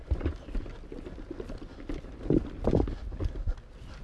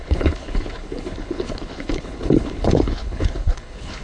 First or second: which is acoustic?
first